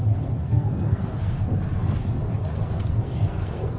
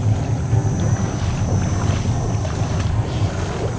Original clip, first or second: second